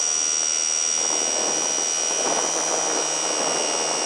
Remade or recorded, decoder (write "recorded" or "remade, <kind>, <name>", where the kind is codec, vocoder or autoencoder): recorded